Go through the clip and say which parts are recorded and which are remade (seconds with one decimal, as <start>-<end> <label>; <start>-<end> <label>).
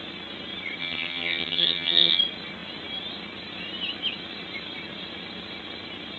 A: 0.0-0.8 recorded; 0.8-2.2 remade; 2.2-6.2 recorded